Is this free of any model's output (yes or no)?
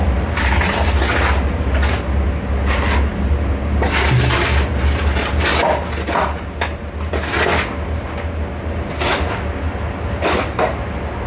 yes